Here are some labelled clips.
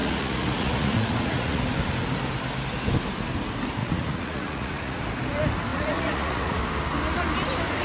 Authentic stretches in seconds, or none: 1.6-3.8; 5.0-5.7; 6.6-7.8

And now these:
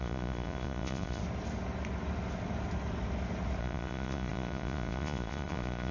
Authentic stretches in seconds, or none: 1.2-3.6

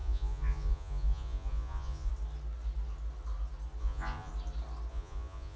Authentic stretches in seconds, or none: 2.1-3.8; 4.3-4.9

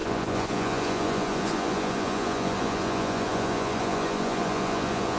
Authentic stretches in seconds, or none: none

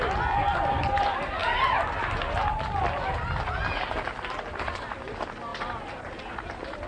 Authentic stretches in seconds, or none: 0.0-6.9